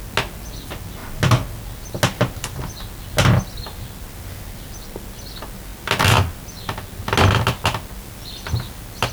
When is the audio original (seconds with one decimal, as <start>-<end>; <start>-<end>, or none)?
0.0-9.1